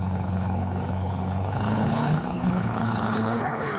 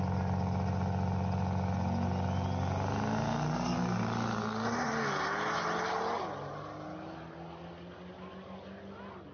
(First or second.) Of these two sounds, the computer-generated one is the first